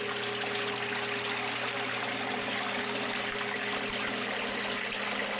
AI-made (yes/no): no